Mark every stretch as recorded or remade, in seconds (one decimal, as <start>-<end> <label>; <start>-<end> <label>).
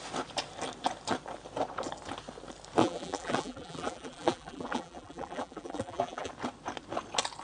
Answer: 0.0-2.8 recorded; 2.8-6.3 remade; 6.3-7.4 recorded